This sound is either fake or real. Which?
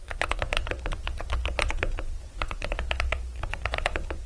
fake